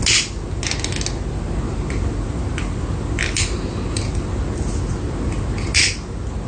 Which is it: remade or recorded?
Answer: recorded